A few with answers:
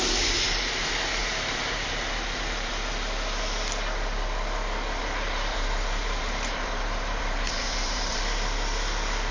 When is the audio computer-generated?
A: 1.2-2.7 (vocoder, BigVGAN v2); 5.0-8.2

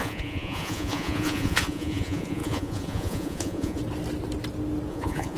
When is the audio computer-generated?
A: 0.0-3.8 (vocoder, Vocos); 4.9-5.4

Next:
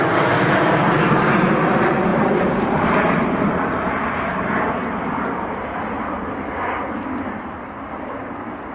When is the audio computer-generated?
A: 2.1-3.9 (vocoder, BigVGAN v2)

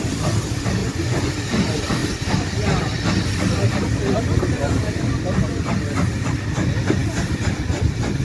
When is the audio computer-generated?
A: 0.8-1.3 (vocoder, Vocos)

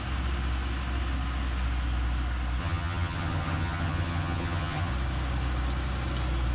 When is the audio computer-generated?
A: 2.6-4.9 (vocoder, HiFi-GAN)

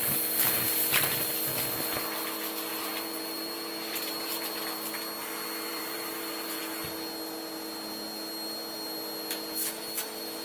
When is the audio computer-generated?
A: 2.7-4.6 (vocoder, BigVGAN v2); 5.7-6.6

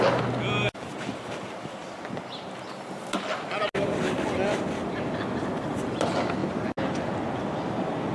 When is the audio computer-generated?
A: none

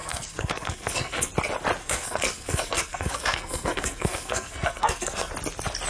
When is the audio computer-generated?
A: 0.0-1.3 (codec, SNAC); 1.8-5.3